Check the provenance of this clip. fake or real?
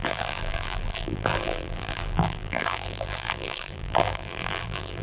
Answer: fake